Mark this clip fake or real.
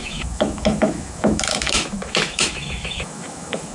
fake